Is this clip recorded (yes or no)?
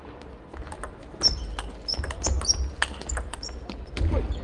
yes